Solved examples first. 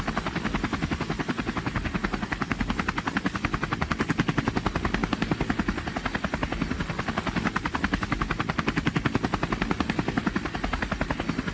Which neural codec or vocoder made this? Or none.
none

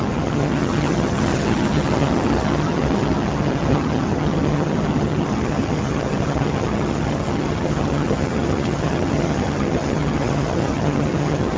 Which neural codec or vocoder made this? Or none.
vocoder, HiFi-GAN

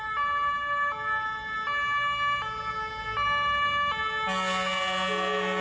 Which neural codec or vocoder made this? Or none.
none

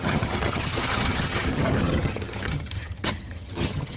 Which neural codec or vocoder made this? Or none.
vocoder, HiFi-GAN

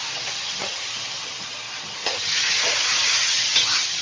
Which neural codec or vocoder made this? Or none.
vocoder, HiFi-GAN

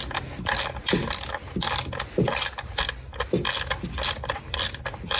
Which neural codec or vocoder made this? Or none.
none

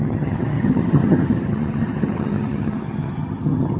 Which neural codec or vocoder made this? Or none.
vocoder, HiFi-GAN